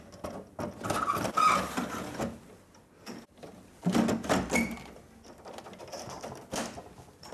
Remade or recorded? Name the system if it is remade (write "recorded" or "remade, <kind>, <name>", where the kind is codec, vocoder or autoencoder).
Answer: recorded